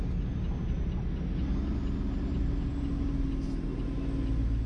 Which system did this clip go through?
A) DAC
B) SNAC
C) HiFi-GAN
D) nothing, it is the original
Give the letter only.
D